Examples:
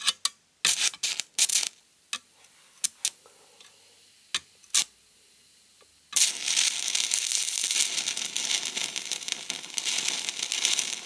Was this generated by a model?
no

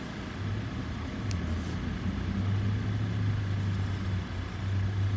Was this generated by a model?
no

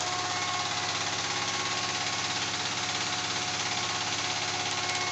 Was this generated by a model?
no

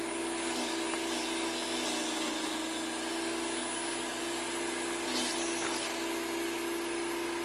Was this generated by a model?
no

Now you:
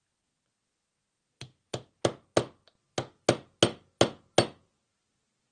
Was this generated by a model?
no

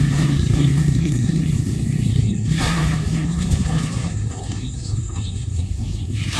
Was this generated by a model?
yes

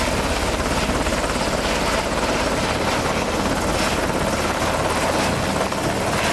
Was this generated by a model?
no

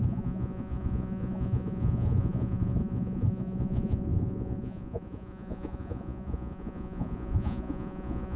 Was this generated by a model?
yes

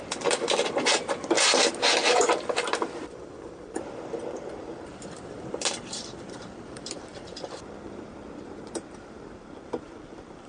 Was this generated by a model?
yes